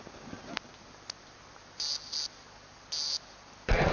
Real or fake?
real